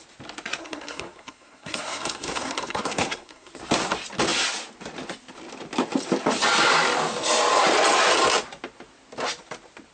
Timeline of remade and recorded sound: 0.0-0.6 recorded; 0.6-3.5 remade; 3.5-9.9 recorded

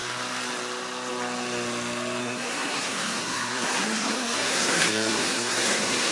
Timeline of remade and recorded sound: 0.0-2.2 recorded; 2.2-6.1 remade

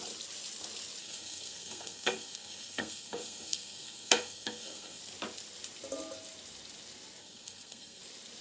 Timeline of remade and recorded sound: 0.0-1.0 recorded; 1.0-5.0 remade; 5.0-7.2 recorded; 7.2-8.0 remade; 8.0-8.4 recorded

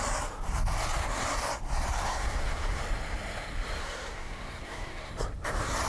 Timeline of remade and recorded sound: 0.0-2.0 recorded; 2.0-2.8 remade; 2.8-3.8 recorded; 3.8-5.1 remade; 5.1-5.9 recorded

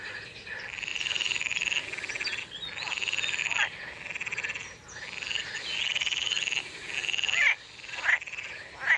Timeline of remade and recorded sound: 0.0-9.0 recorded